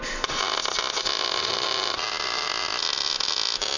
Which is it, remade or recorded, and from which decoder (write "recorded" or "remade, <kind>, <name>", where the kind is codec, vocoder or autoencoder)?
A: recorded